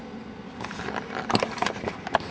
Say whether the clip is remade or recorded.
recorded